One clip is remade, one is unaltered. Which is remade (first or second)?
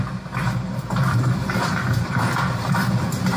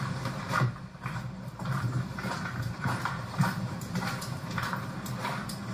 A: second